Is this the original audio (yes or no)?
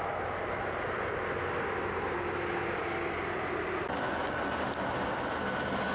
yes